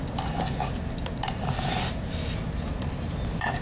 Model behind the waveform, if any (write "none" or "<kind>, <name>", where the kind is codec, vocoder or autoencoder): none